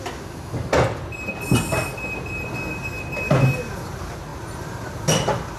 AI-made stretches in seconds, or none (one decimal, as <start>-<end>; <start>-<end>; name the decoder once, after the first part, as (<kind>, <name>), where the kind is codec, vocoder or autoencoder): none